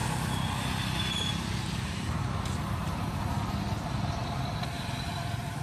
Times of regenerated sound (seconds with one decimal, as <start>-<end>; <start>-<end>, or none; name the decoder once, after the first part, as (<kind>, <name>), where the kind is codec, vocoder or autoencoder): none